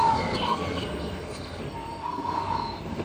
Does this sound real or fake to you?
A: fake